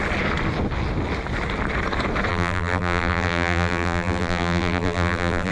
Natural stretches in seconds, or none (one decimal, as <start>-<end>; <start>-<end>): 0.0-2.3